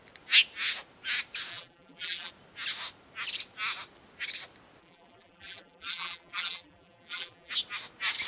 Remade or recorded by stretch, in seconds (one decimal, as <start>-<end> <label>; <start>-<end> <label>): 0.0-1.5 recorded; 1.5-2.3 remade; 2.3-4.8 recorded; 4.8-7.5 remade; 7.5-8.3 recorded